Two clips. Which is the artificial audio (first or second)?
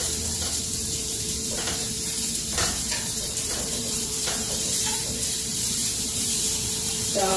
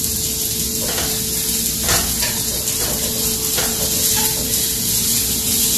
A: first